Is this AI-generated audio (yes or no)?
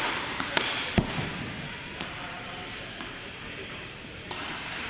yes